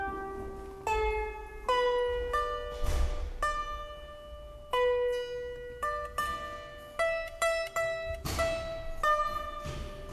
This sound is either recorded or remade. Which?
recorded